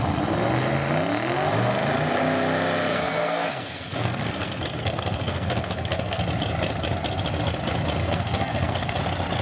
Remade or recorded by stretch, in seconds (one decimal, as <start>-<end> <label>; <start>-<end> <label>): 0.0-2.9 recorded; 2.9-6.2 remade; 6.2-8.0 recorded; 8.0-9.0 remade; 9.0-9.4 recorded